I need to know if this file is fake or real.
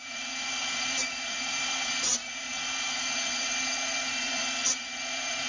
fake